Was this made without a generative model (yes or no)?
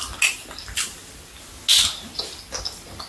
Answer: yes